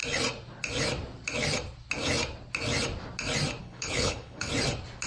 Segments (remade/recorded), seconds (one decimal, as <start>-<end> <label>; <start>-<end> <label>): 0.0-3.6 recorded; 3.6-4.5 remade; 4.5-5.1 recorded